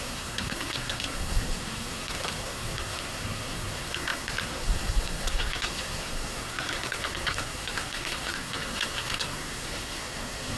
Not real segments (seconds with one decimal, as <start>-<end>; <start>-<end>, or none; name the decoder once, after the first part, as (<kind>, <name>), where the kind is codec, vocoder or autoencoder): 0.0-10.6 (codec, SNAC)